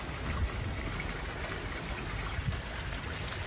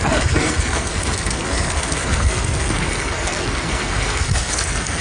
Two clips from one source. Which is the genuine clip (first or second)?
first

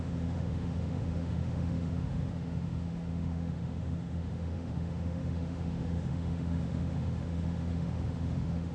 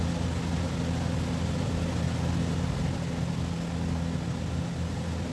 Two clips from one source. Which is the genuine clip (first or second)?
second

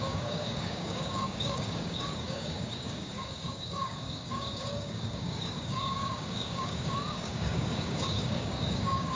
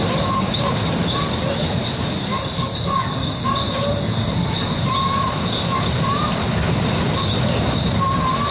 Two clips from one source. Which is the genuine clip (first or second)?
second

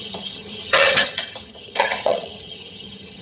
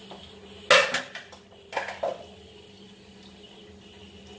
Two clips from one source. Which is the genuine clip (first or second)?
second